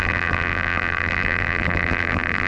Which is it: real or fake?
fake